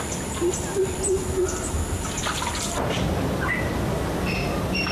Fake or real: real